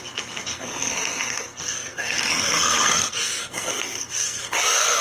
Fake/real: fake